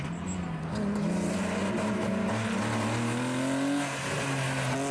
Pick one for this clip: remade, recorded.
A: recorded